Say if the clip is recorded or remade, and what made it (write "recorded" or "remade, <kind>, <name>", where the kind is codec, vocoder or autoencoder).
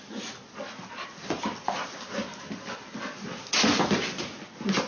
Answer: recorded